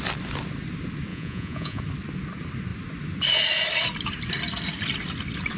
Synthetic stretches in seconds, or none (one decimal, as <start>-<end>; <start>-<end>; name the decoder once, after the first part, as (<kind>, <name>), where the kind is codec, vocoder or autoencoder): 1.1-1.8 (vocoder, Vocos)